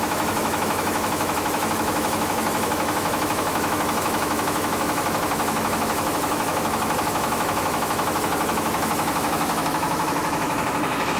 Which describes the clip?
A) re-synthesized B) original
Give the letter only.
A